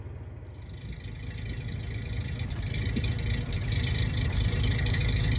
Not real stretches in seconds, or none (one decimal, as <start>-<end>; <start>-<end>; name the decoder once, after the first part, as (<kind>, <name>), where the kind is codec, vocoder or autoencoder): 2.2-5.0 (vocoder, BigVGAN v2)